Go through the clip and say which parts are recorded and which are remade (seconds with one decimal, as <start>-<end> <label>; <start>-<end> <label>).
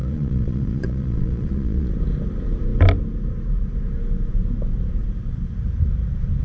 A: 0.0-1.9 remade; 1.9-6.4 recorded